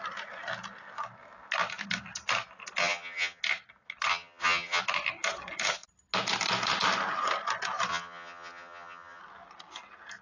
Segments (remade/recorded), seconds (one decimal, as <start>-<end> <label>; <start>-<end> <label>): 0.0-2.8 recorded; 2.8-3.4 remade; 3.4-4.1 recorded; 4.1-4.8 remade; 4.8-7.9 recorded; 7.9-9.2 remade; 9.2-10.2 recorded